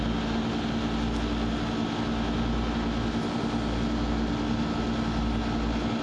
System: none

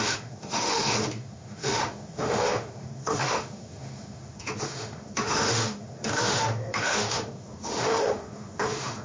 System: autoencoder, DAC-VAE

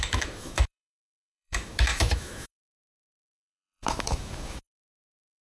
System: autoencoder, DAC-VAE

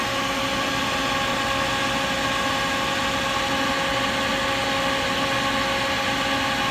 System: none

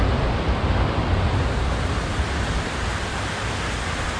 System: none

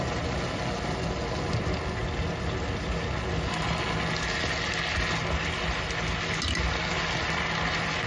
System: none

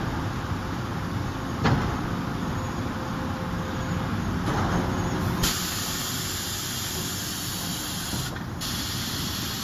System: none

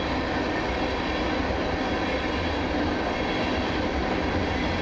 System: none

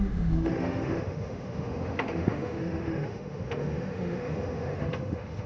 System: autoencoder, DAC-VAE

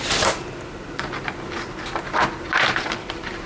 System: none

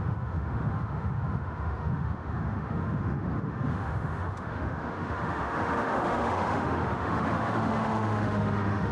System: autoencoder, DAC-VAE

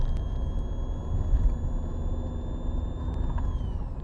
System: none